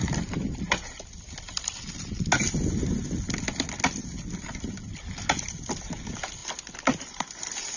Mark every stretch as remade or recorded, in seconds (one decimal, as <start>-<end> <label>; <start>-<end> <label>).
0.0-7.8 recorded